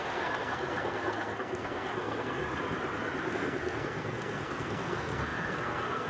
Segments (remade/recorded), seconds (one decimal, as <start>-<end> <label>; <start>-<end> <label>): 0.0-2.4 remade; 2.4-3.3 recorded; 3.3-6.1 remade